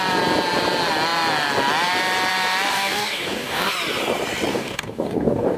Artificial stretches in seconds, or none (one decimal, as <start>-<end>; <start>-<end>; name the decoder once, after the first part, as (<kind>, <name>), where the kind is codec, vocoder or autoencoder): 2.7-3.7 (codec, DAC); 4.5-5.6